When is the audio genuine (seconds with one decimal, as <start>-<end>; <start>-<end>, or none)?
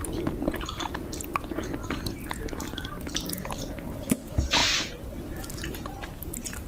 0.0-6.7